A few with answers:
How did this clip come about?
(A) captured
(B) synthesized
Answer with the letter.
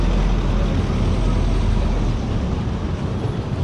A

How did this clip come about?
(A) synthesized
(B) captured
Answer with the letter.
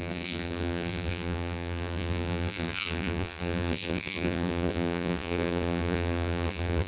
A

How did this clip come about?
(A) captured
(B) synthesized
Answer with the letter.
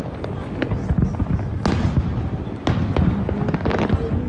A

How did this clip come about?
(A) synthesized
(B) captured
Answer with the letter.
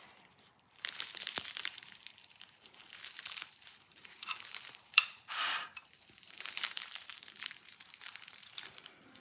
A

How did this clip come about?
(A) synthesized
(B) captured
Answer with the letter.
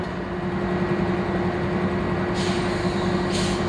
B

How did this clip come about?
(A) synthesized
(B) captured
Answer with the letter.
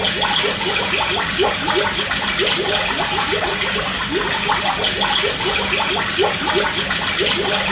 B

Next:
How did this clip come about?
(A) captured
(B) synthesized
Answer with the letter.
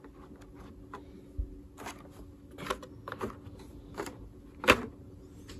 A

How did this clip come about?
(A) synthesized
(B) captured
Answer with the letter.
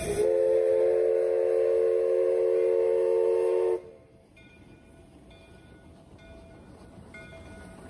B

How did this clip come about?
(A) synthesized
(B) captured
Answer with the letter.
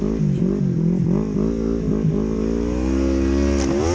B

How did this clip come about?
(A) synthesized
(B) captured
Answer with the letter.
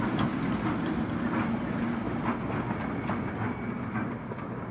B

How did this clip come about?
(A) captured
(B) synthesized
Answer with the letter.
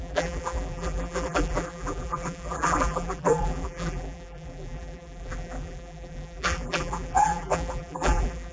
B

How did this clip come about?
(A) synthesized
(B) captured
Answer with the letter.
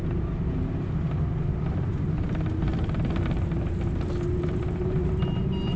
A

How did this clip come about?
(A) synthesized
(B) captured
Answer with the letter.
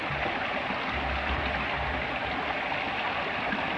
B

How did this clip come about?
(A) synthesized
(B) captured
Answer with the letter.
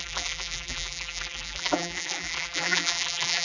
A